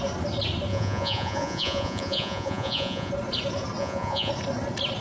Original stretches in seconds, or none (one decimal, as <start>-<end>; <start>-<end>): 0.0-0.7; 3.1-3.8; 4.3-5.0